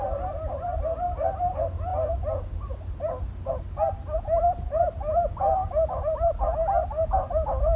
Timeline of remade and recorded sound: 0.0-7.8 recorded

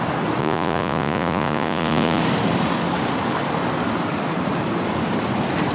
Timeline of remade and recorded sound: 0.0-0.4 recorded; 0.4-2.2 remade; 2.2-5.7 recorded

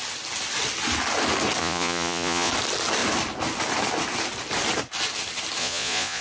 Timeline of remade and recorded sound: 0.0-1.6 recorded; 1.6-2.5 remade; 2.5-5.6 recorded; 5.6-6.2 remade

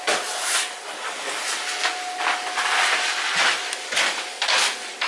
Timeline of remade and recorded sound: 0.0-5.1 recorded

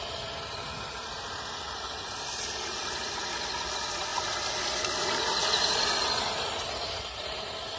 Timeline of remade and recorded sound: 0.0-7.8 recorded